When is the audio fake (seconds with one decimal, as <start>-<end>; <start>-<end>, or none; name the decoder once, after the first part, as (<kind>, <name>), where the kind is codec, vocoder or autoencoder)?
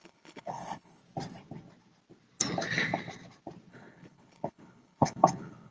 0.0-1.0 (codec, HILCodec); 3.7-5.7